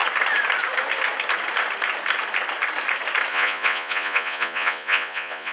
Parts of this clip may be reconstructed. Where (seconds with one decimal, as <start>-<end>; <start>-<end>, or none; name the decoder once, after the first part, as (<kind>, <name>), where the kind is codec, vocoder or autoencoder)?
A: 3.3-5.5 (vocoder, Vocos)